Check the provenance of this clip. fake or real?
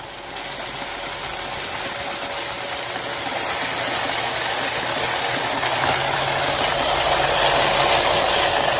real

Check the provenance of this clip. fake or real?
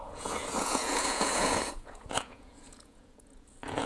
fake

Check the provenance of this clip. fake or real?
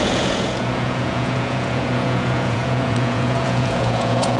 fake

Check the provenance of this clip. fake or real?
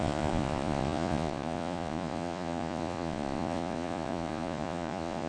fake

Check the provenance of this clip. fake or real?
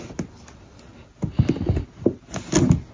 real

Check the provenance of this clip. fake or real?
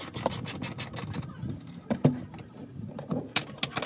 real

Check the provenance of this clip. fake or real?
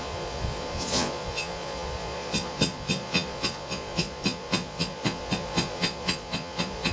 fake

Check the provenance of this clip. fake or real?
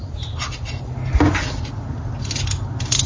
real